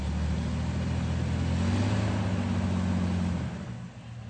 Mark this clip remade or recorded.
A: recorded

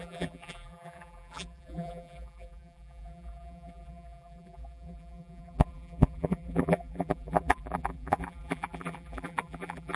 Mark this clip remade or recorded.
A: remade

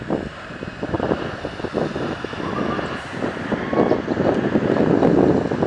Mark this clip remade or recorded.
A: recorded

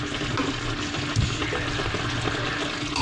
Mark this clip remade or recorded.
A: recorded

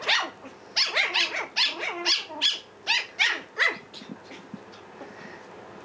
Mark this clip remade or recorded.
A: recorded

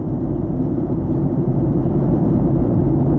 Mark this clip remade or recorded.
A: remade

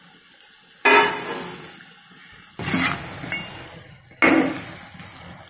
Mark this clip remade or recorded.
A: recorded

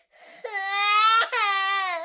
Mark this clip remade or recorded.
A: recorded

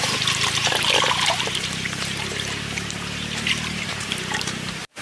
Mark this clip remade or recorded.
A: remade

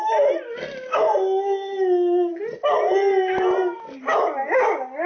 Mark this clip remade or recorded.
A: recorded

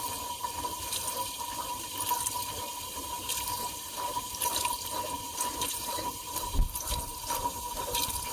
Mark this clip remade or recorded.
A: remade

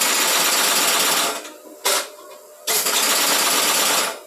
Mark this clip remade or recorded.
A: recorded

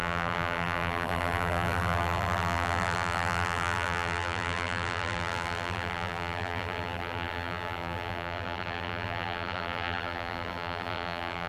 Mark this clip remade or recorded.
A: remade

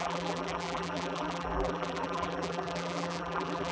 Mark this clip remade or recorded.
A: remade